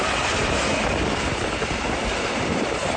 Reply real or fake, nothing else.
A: real